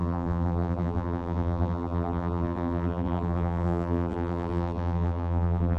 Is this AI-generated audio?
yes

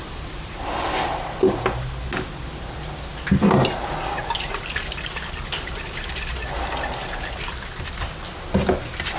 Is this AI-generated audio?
no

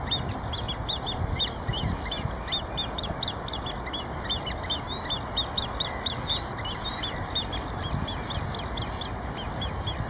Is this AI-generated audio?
no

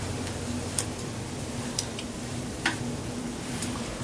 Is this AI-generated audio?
yes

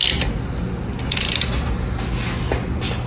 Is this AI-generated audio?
no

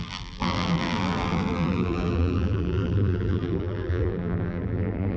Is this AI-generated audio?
yes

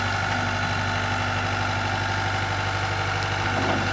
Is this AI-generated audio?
no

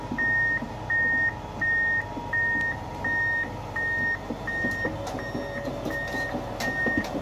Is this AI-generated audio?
no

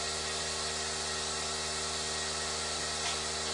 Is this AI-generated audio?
no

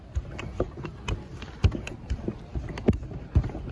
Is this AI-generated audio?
no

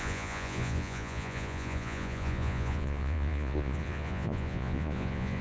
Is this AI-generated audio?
yes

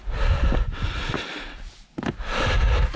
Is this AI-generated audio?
no